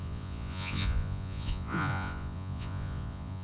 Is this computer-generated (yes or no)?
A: yes